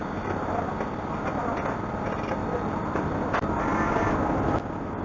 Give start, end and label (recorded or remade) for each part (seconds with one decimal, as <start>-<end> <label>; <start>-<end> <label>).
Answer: 0.0-0.5 remade; 0.5-2.4 recorded; 2.4-3.0 remade; 3.0-5.0 recorded